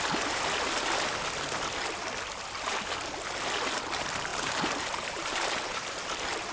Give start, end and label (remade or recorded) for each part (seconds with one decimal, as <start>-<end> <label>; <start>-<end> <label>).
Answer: 0.0-4.3 recorded; 4.3-6.0 remade; 6.0-6.5 recorded